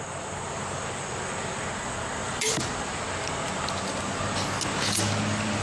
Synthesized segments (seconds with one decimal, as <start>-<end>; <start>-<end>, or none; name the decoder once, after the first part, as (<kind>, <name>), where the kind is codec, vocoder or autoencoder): 2.2-2.7 (vocoder, BigVGAN v2)